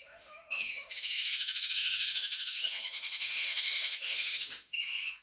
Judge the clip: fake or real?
fake